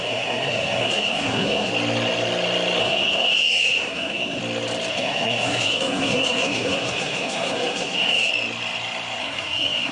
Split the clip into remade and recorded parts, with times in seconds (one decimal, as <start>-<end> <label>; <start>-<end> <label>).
0.0-1.7 remade; 1.7-2.8 recorded; 2.8-4.4 remade; 4.4-4.9 recorded; 4.9-8.3 remade; 8.3-9.2 recorded; 9.2-9.9 remade

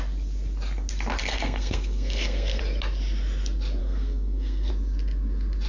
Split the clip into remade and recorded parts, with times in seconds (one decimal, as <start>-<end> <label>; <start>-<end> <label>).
0.0-1.2 recorded; 1.2-2.6 remade; 2.6-3.8 recorded; 3.8-4.7 remade; 4.7-5.7 recorded

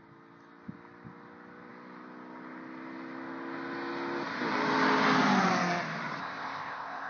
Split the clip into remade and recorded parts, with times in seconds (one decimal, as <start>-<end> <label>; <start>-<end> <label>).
0.0-6.2 recorded; 6.2-7.1 remade